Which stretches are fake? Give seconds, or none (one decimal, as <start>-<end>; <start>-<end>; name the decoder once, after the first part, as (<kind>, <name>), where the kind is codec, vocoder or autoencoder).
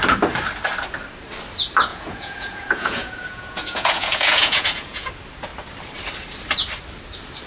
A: 1.9-5.1 (vocoder, Vocos)